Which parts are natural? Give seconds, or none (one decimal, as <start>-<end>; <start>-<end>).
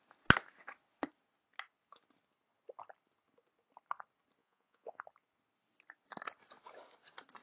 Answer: 0.0-4.4; 5.0-7.4